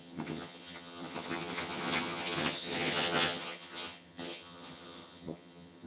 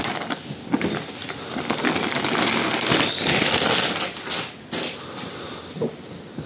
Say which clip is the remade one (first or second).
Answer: first